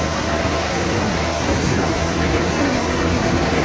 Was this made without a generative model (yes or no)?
no